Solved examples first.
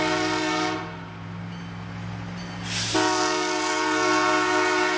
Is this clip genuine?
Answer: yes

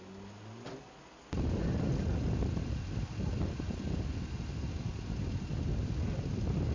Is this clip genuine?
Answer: yes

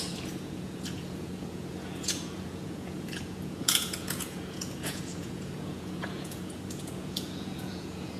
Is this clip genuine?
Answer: no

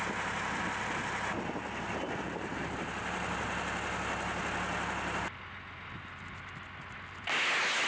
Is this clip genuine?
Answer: yes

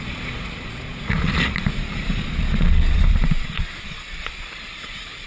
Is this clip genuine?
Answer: no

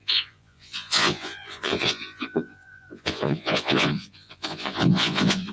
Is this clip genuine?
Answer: no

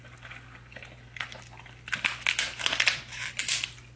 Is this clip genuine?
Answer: yes